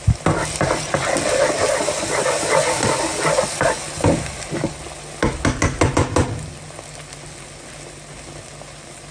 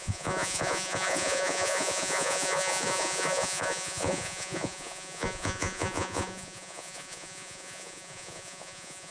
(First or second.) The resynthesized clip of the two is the second